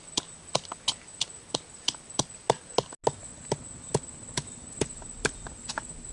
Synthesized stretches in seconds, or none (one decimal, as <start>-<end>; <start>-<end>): none